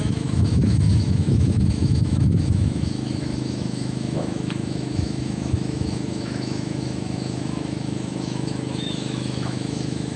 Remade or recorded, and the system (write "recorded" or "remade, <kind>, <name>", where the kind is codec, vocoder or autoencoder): remade, autoencoder, DAC-VAE